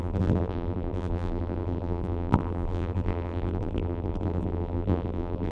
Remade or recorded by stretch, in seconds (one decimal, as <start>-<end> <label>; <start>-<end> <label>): 0.0-5.5 remade